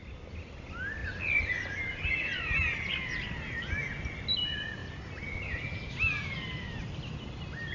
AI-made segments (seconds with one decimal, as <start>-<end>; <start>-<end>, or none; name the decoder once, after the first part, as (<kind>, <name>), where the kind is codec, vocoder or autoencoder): none